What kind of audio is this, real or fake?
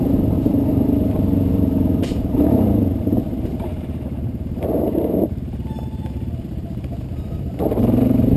fake